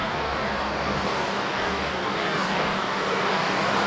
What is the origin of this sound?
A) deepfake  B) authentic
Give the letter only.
A